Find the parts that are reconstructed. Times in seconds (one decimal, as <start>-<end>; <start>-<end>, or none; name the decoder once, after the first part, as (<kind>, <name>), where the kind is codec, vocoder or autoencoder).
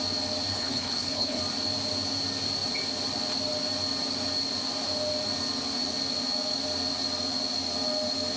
0.5-1.4 (codec, HILCodec)